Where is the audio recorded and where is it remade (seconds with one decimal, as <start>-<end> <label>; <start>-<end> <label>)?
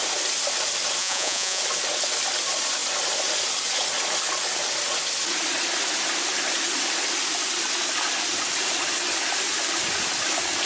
0.0-1.0 recorded; 1.0-1.6 remade; 1.6-10.7 recorded